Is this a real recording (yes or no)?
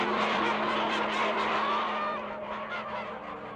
no